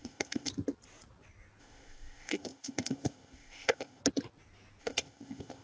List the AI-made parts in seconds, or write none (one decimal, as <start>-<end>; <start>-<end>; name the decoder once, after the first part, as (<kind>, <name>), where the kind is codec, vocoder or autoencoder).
0.0-0.5 (codec, ZipCodec); 1.6-4.0; 4.8-5.6